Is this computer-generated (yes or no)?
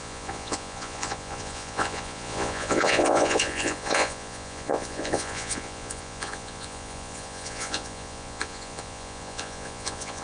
yes